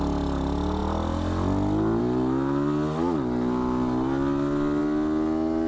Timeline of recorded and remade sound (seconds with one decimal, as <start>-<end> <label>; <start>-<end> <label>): 0.0-5.7 recorded